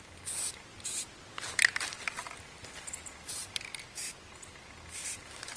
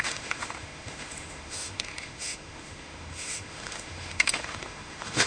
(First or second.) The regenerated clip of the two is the second